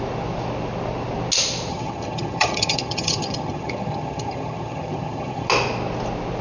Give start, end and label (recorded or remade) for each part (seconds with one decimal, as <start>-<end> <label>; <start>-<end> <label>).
0.0-1.7 recorded; 1.7-5.5 remade; 5.5-6.4 recorded